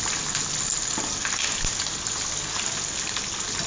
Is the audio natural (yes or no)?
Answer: yes